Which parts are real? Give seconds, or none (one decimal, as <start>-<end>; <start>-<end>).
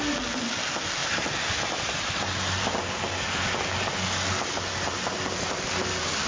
0.0-6.3